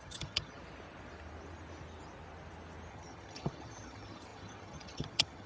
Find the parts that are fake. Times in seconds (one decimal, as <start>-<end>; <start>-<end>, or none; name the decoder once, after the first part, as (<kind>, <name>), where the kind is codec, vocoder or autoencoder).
0.0-0.6 (vocoder, HiFi-GAN); 2.9-5.5